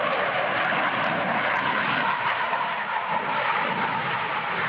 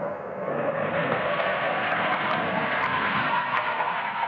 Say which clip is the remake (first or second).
second